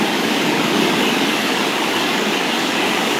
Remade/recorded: remade